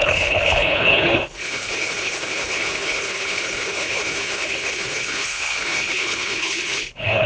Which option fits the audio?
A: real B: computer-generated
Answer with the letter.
B